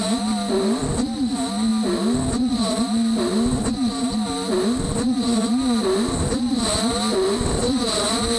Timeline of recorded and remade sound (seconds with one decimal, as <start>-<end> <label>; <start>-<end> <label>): 0.0-8.4 recorded

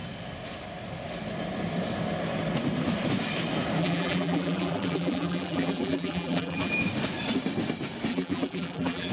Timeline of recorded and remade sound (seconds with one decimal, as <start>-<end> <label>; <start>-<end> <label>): 0.0-3.8 recorded; 3.8-6.7 remade; 6.7-8.1 recorded; 8.1-9.1 remade

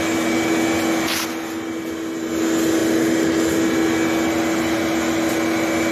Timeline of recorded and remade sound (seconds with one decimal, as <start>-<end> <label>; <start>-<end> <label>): 0.0-5.9 recorded

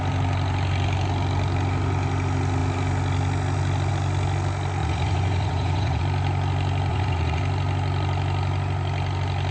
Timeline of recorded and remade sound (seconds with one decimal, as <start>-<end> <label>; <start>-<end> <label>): 0.0-4.8 recorded; 4.8-6.0 remade; 6.0-6.9 recorded; 6.9-7.4 remade; 7.4-9.5 recorded

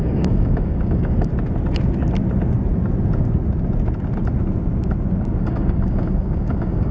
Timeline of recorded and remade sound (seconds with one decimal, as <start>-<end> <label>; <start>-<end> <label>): 0.0-1.3 remade; 1.3-5.4 recorded; 5.4-6.9 remade

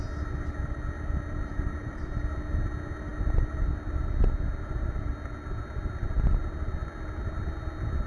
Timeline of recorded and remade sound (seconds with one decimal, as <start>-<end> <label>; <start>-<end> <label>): 0.0-1.5 recorded; 1.5-2.2 remade; 2.2-8.1 recorded

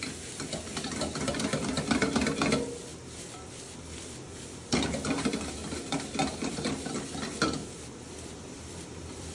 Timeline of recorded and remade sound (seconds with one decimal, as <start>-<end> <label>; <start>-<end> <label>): 0.0-5.6 remade; 5.6-6.5 recorded; 6.5-7.6 remade; 7.6-8.1 recorded; 8.1-9.3 remade